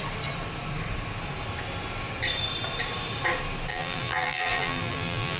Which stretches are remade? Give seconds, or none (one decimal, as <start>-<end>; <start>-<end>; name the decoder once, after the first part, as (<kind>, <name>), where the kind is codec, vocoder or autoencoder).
3.7-5.4 (vocoder, BigVGAN v2)